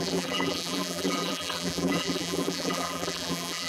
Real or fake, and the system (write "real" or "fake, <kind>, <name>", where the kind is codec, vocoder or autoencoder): fake, vocoder, BigVGAN v2